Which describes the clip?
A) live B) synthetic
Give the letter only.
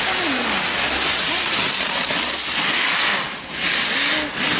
A